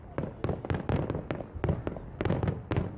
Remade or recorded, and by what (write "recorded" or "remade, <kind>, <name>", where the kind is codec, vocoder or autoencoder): recorded